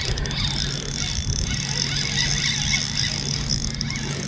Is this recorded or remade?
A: recorded